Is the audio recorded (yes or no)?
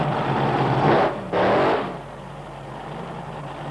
yes